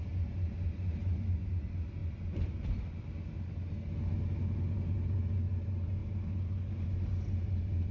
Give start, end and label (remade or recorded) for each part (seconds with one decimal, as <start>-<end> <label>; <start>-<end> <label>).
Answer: 0.0-7.9 recorded